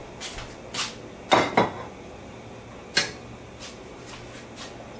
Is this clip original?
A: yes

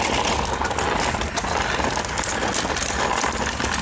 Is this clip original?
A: yes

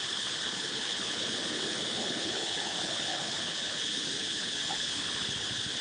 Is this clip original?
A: no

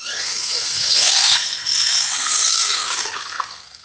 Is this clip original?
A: no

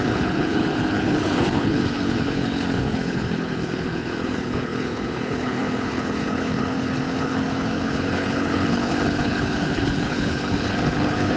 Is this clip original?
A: no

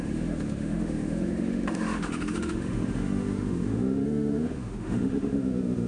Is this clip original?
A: no